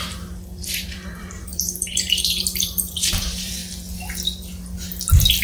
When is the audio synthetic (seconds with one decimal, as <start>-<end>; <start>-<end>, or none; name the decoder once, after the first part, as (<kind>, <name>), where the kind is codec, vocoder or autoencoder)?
0.0-3.6 (vocoder, BigVGAN v2)